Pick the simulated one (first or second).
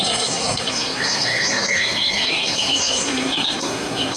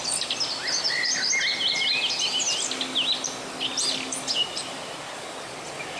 first